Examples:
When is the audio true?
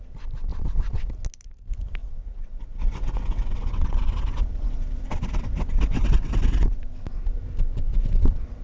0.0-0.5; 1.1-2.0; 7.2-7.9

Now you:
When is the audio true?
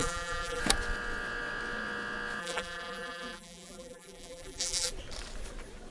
0.6-2.4; 4.9-5.9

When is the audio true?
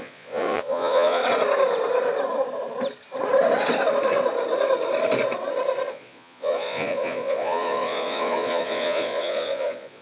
1.2-5.9